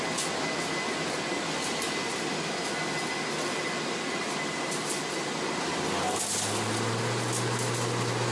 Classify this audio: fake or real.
real